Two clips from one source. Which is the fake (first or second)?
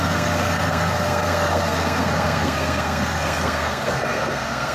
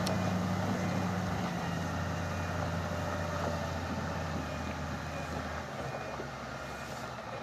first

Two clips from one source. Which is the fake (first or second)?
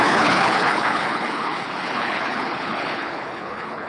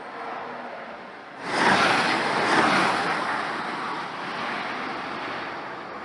first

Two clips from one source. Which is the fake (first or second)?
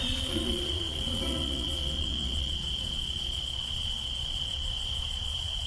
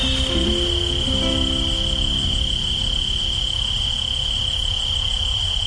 first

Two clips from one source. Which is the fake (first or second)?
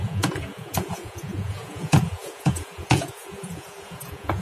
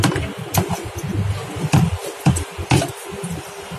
first